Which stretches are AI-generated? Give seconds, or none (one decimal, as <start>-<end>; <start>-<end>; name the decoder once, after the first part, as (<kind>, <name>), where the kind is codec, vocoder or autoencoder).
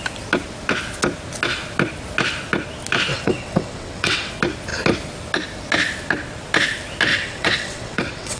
3.1-4.3 (vocoder, WaveNeXt); 7.1-8.4